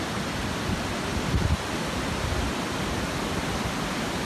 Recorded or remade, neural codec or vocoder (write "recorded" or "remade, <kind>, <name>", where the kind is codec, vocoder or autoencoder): recorded